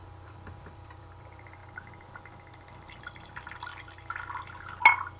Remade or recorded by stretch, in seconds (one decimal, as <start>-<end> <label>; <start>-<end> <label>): 0.0-1.6 remade; 1.6-3.0 recorded; 3.0-3.7 remade; 3.7-5.2 recorded